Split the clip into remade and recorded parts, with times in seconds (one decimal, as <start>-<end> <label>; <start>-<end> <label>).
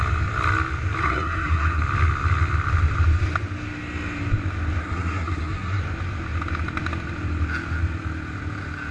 0.0-1.0 recorded; 1.0-1.8 remade; 1.8-4.8 recorded; 4.8-5.8 remade; 5.8-8.9 recorded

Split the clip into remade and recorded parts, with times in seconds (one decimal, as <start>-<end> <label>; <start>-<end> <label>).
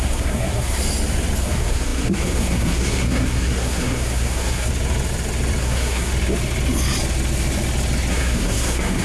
0.0-0.8 remade; 0.8-1.4 recorded; 1.4-4.7 remade; 4.7-5.6 recorded; 5.6-6.1 remade; 6.1-8.1 recorded; 8.1-9.0 remade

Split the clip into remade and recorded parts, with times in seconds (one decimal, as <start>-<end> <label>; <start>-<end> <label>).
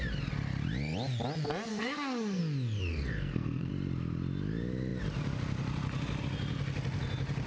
0.0-1.7 recorded; 1.7-2.4 remade; 2.4-2.9 recorded; 2.9-3.7 remade; 3.7-7.5 recorded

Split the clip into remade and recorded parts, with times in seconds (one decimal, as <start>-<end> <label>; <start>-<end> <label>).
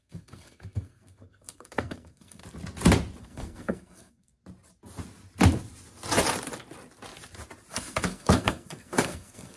0.0-2.4 remade; 2.4-3.2 recorded; 3.2-4.4 remade; 4.4-7.7 recorded; 7.7-9.6 remade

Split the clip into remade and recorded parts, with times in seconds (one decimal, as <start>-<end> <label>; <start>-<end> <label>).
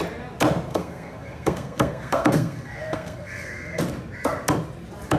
0.0-0.7 recorded; 0.7-3.8 remade; 3.8-5.2 recorded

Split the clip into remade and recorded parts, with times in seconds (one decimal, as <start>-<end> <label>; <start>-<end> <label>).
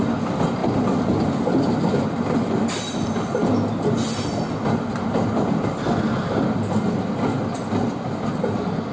0.0-8.9 recorded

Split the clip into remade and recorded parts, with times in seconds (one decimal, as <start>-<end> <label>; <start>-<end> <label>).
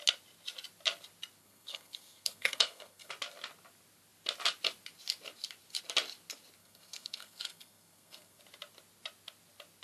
0.0-1.4 recorded; 1.4-3.1 remade; 3.1-6.6 recorded; 6.6-8.4 remade; 8.4-9.8 recorded